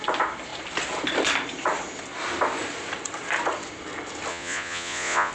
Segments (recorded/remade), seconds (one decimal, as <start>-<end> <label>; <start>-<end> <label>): 0.0-4.3 recorded; 4.3-5.3 remade